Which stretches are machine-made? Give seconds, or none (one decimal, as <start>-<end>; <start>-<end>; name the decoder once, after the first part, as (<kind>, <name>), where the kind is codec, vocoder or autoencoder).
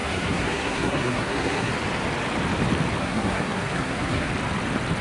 0.0-1.7 (codec, SNAC); 3.0-4.3